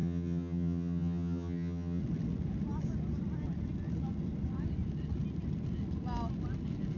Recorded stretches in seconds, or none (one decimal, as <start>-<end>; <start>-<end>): 2.0-7.0